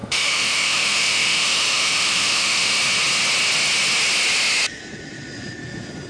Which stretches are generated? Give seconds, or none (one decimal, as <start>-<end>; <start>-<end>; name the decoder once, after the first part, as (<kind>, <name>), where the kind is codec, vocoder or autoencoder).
0.0-2.7 (autoencoder, DAC-VAE)